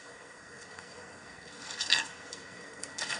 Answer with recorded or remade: remade